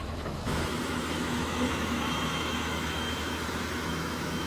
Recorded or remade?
remade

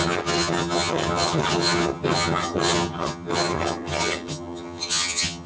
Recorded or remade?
remade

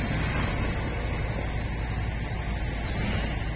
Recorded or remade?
recorded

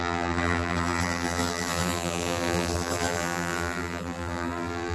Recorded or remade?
remade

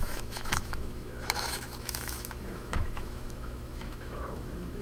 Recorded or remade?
remade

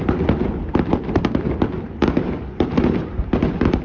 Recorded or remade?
recorded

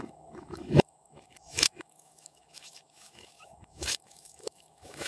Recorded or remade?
remade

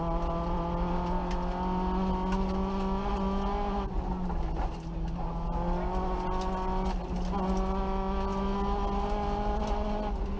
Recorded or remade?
recorded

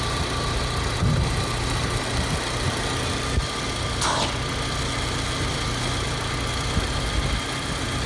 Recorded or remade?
recorded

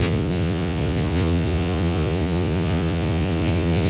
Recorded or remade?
remade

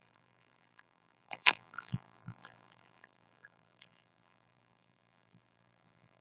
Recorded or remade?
remade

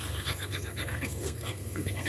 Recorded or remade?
remade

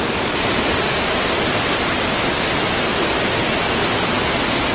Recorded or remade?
recorded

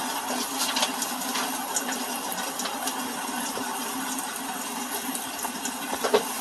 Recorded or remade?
recorded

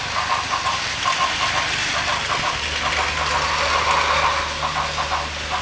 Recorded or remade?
recorded